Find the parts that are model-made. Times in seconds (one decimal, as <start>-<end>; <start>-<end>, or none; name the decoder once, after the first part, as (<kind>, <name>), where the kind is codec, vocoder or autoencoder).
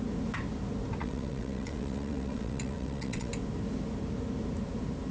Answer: 1.0-3.3 (vocoder, WaveNeXt)